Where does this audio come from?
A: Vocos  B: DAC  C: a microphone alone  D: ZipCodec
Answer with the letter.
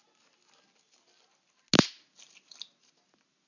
C